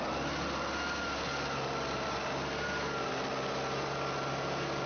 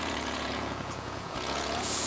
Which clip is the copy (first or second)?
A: second